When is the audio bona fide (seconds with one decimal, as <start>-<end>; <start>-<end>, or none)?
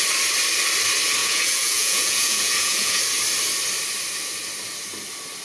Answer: 0.0-1.2; 3.0-5.4